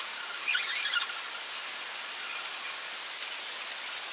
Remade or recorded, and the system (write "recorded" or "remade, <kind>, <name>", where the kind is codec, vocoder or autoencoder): recorded